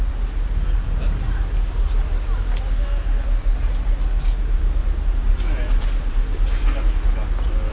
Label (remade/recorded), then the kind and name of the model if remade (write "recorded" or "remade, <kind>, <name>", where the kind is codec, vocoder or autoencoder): recorded